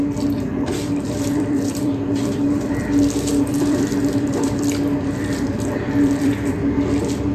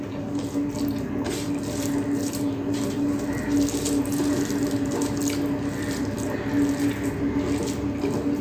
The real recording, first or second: second